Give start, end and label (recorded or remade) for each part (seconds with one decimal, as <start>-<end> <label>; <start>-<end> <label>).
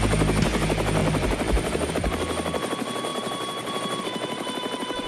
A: 0.0-1.0 recorded; 1.0-1.9 remade; 1.9-3.1 recorded; 3.1-4.0 remade; 4.0-5.1 recorded